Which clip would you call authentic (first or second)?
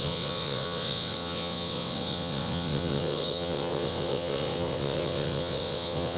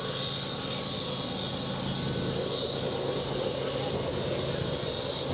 second